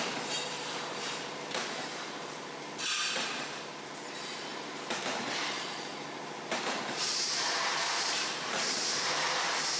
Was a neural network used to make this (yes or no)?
yes